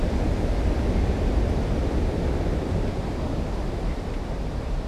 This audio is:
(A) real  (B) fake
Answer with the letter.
B